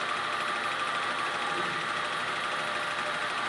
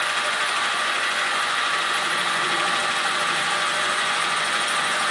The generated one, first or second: second